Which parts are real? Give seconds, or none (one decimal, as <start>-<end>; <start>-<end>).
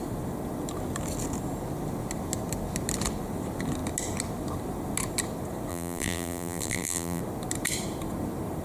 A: 0.0-5.7; 7.2-8.6